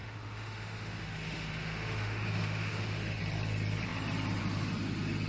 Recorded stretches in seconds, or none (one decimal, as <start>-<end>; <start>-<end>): 3.2-5.3